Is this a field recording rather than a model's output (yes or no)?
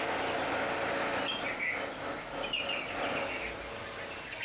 yes